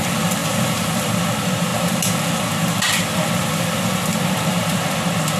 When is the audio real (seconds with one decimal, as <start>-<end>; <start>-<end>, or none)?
0.0-0.4; 1.2-1.7; 4.9-5.4